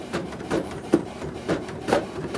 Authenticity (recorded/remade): remade